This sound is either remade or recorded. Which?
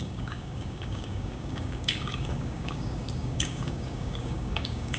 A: remade